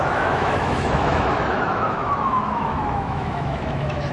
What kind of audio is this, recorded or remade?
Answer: remade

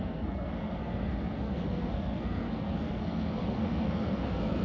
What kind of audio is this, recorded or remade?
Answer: remade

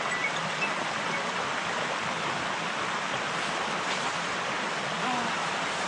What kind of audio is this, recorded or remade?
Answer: recorded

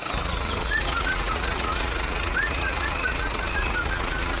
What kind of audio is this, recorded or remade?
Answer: remade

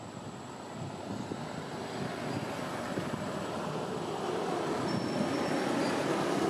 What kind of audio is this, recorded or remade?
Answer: recorded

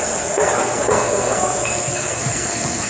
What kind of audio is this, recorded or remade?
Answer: remade